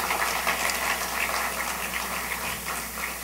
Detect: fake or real real